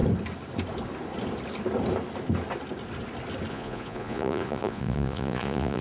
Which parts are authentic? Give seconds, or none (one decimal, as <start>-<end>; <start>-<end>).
0.0-3.5